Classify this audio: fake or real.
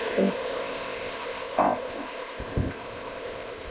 fake